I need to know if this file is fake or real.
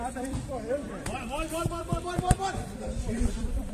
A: fake